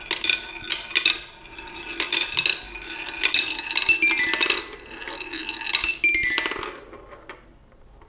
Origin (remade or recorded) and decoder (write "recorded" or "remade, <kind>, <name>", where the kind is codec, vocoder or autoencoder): recorded